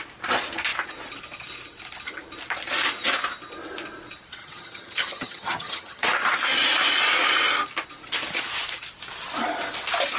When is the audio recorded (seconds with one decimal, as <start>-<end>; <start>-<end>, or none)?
0.0-4.4; 6.0-10.2